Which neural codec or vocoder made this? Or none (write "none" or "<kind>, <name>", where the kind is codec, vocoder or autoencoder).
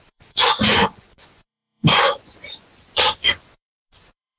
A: vocoder, Vocos